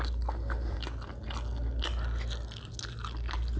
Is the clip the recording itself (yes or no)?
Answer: yes